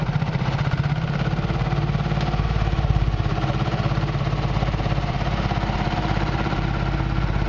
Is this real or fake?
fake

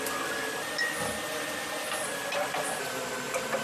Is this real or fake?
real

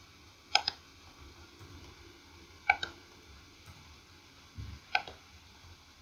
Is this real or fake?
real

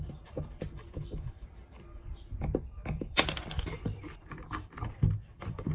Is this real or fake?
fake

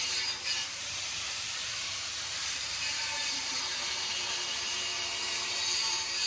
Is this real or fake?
fake